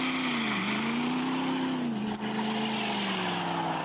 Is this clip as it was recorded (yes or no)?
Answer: yes